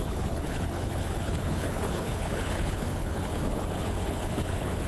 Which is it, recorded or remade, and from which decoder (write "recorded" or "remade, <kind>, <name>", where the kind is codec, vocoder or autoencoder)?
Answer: remade, codec, HILCodec